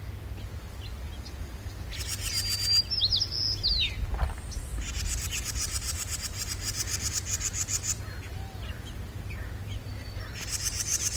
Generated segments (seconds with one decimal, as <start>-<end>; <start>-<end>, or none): none

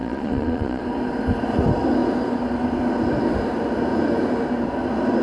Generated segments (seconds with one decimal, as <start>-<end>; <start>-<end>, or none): 0.0-0.8

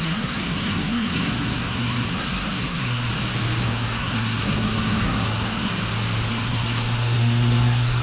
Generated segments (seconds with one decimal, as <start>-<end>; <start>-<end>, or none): 0.0-3.1; 3.6-5.7; 6.3-8.0

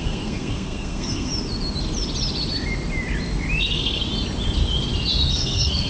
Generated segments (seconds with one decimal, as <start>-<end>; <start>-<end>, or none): 0.0-1.3; 3.6-4.0; 5.3-5.9